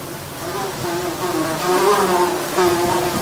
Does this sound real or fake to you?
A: real